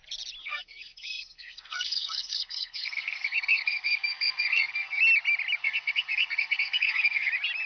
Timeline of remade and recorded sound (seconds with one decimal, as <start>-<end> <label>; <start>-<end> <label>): 0.0-0.4 recorded; 0.4-5.0 remade; 5.0-5.6 recorded; 5.6-7.3 remade; 7.3-7.7 recorded